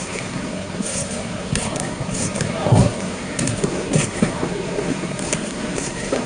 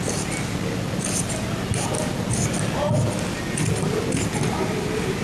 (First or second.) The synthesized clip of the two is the first